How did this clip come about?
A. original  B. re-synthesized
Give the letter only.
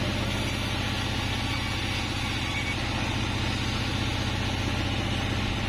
A